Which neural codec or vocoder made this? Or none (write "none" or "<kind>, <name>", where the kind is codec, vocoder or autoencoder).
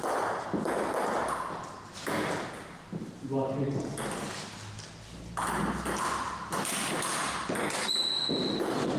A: none